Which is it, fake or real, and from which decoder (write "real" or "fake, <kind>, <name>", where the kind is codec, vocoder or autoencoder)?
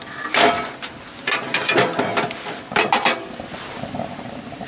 real